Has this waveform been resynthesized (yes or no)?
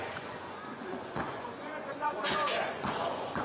yes